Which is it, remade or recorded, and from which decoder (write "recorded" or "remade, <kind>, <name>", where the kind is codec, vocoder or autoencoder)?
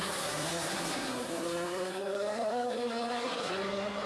remade, codec, SNAC